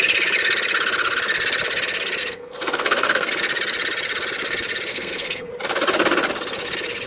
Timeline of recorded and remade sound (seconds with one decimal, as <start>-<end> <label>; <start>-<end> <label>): 0.0-2.2 recorded; 2.2-3.3 remade; 3.3-4.9 recorded; 4.9-5.5 remade; 5.5-7.1 recorded